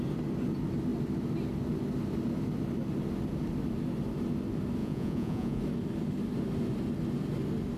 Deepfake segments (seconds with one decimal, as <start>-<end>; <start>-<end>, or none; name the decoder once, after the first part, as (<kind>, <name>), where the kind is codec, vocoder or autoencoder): 4.8-5.6 (vocoder, Vocos)